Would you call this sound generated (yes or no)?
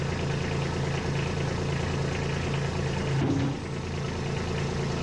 no